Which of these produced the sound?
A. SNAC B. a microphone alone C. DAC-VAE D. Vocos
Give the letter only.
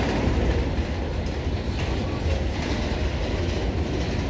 B